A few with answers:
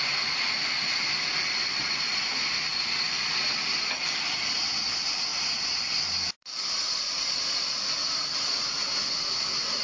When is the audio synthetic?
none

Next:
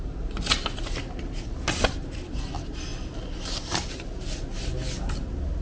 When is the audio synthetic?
none

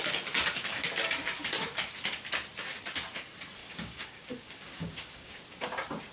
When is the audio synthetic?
3.6-5.4

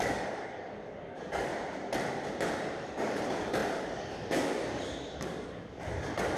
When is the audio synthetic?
0.0-1.5; 2.7-6.4